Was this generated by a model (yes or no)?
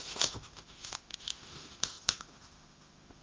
yes